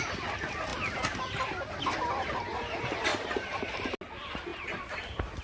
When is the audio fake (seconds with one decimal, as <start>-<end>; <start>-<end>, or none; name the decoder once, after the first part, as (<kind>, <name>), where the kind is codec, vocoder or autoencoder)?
3.1-3.7 (vocoder, BigVGAN v2); 4.5-5.4